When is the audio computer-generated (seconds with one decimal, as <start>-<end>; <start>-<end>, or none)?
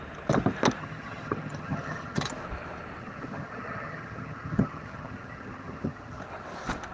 0.8-2.3; 3.0-6.2